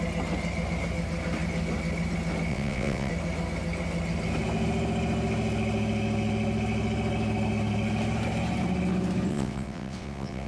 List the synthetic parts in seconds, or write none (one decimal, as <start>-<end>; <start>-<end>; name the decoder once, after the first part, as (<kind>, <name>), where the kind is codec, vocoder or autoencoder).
2.5-3.1 (vocoder, WaveNeXt); 9.3-10.5